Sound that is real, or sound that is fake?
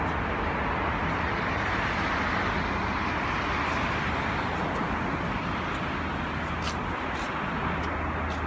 real